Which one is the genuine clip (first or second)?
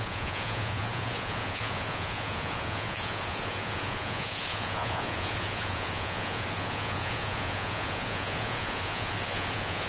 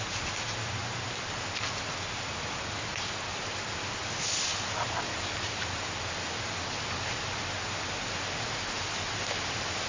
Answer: second